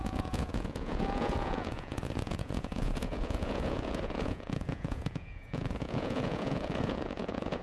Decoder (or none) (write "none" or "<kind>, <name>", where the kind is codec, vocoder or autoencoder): vocoder, Vocos